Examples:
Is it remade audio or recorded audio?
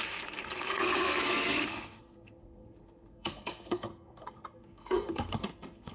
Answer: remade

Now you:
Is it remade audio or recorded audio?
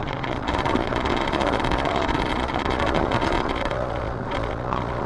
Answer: remade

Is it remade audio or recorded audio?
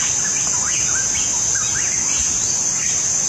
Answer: recorded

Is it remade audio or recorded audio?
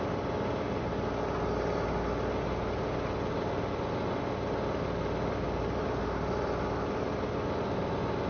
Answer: recorded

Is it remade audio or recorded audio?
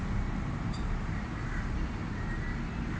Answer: recorded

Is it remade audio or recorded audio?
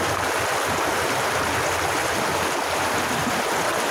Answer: recorded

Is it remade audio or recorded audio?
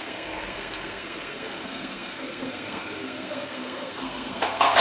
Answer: remade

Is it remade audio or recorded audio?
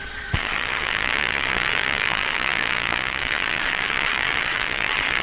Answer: remade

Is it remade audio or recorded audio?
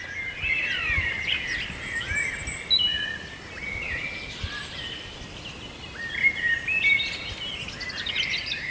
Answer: recorded